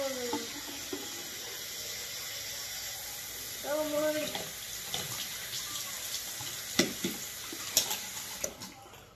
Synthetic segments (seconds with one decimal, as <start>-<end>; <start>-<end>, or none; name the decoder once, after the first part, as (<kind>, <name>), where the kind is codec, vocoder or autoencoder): none